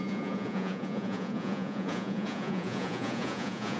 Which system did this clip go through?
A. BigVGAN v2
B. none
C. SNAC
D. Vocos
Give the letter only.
D